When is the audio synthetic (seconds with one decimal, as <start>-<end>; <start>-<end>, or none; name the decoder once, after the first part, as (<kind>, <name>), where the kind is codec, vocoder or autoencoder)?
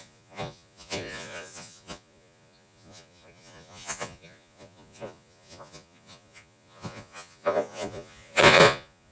0.0-9.1 (vocoder, Vocos)